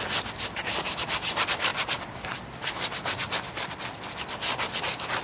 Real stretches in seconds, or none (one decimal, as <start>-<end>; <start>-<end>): 0.0-5.2